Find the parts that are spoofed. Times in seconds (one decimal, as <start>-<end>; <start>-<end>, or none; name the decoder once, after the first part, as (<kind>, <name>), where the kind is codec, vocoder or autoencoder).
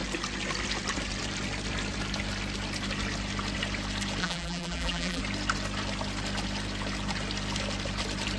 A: 4.2-5.2 (vocoder, BigVGAN v2)